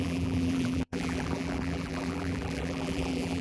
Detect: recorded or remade remade